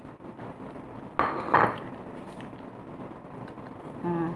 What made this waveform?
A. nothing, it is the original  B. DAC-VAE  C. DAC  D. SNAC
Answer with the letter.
A